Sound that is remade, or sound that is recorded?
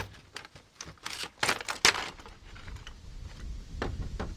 recorded